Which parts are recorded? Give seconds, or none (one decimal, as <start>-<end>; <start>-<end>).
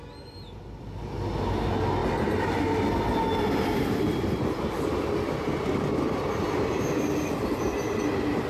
0.0-8.5